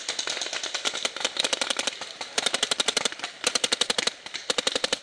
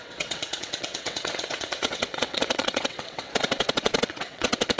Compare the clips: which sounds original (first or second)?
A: first